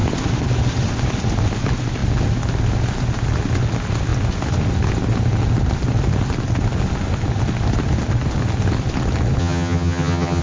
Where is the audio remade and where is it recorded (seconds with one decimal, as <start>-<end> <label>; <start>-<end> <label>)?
0.0-9.4 recorded; 9.4-10.4 remade